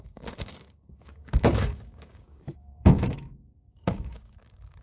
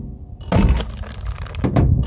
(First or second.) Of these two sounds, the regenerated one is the first